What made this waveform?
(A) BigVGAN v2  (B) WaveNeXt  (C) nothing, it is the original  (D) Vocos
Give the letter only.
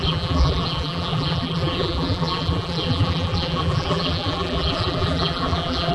A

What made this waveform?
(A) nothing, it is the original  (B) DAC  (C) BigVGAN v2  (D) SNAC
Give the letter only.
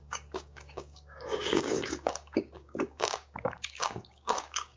B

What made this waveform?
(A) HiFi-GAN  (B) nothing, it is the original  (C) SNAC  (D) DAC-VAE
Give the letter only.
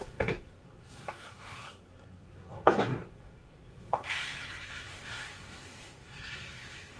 C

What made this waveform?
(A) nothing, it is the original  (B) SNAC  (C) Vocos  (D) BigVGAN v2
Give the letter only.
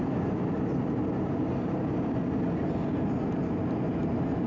A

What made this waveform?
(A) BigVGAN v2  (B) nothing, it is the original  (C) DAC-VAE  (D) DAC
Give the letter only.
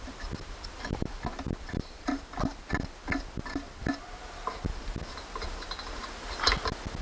B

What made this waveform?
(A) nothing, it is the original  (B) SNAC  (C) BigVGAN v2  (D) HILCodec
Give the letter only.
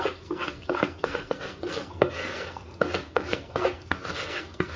B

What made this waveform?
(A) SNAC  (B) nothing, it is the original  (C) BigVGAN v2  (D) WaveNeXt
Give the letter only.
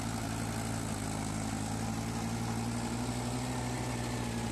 B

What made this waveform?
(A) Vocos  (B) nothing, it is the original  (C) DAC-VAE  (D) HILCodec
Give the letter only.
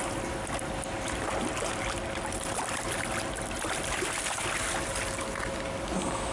B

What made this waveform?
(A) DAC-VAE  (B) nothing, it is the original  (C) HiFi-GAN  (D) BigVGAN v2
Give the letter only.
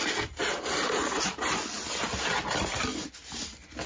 B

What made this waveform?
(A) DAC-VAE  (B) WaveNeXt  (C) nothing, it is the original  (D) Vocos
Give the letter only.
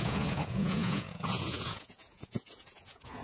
D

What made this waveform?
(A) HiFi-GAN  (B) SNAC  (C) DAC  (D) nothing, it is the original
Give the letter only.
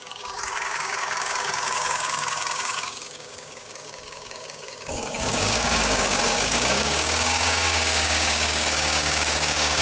C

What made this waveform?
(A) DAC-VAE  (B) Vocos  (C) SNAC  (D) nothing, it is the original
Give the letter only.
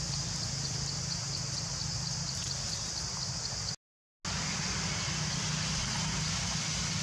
D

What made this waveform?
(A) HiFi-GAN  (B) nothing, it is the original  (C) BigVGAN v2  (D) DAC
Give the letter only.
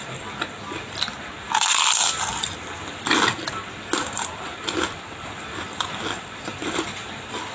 B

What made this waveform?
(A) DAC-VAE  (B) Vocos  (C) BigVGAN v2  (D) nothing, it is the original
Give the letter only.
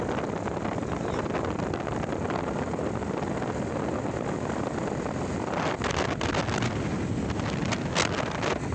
D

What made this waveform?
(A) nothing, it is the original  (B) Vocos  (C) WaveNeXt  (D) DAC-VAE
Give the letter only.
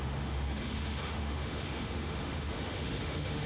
D